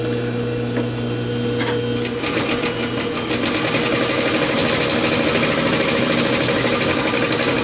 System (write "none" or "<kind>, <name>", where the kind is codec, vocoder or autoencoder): none